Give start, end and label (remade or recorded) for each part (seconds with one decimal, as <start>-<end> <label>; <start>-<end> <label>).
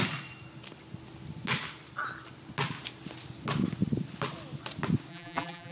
0.0-5.1 recorded; 5.1-5.7 remade